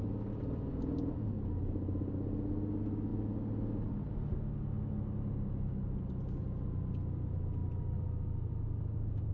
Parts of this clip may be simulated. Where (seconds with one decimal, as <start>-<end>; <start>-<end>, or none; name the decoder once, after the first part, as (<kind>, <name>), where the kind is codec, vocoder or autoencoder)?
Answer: none